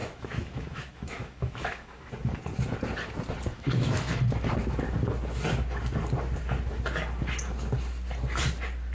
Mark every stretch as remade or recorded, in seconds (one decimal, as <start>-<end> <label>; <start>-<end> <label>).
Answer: 0.0-2.1 remade; 2.1-3.5 recorded; 3.5-4.2 remade; 4.2-8.9 recorded